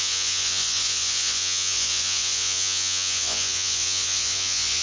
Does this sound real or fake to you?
fake